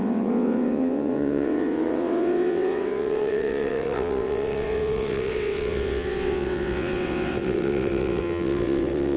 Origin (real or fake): fake